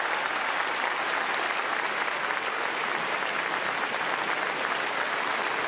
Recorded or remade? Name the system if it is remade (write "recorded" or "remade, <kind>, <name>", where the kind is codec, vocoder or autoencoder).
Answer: recorded